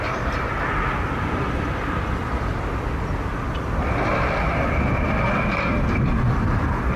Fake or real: real